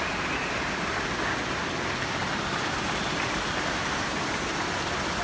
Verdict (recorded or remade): recorded